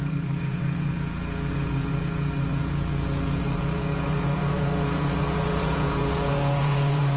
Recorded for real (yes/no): no